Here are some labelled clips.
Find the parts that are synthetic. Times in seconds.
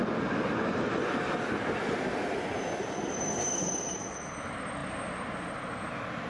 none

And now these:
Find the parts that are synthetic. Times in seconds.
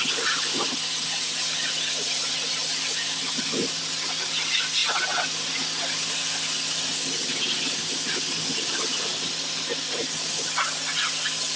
none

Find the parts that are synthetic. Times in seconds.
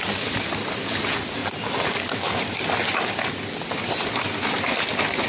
none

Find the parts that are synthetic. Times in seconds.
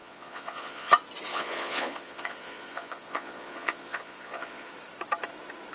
0.0-0.9 (vocoder, Vocos); 1.3-4.7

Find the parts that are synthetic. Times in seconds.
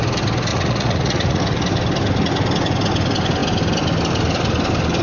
0.5-1.4 (vocoder, Vocos)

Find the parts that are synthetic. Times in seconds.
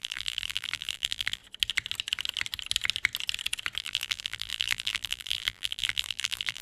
0.0-1.4 (vocoder, BigVGAN v2); 3.8-6.6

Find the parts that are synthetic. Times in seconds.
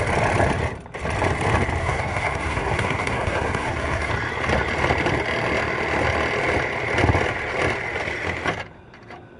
1.8-4.1 (codec, SNAC)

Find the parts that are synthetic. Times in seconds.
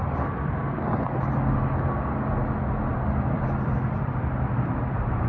0.0-1.0 (vocoder, BigVGAN v2); 2.9-4.8